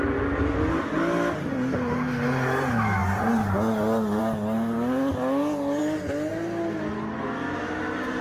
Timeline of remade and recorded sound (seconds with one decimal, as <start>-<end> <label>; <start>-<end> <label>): 0.0-8.2 recorded

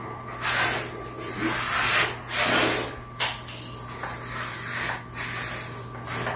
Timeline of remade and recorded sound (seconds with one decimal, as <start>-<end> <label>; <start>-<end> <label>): 0.0-6.4 recorded

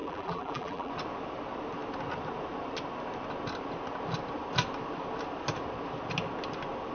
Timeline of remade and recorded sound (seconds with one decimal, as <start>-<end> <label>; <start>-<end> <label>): 0.0-0.9 remade; 0.9-6.9 recorded